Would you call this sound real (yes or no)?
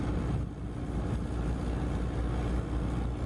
yes